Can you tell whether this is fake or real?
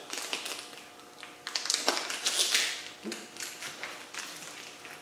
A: real